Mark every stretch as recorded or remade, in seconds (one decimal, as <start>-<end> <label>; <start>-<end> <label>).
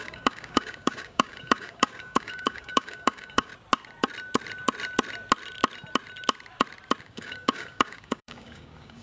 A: 0.0-3.5 remade; 3.5-7.0 recorded; 7.0-9.0 remade